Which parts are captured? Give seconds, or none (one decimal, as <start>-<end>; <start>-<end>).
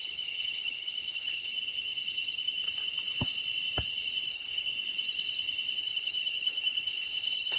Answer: 1.5-4.3; 4.7-5.8